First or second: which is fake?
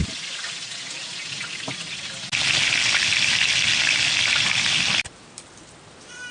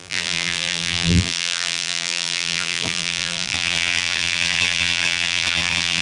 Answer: second